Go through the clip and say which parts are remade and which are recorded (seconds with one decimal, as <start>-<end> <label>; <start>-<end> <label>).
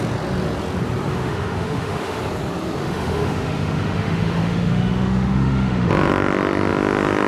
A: 0.0-1.1 recorded; 1.1-2.2 remade; 2.2-2.8 recorded; 2.8-5.9 remade; 5.9-7.3 recorded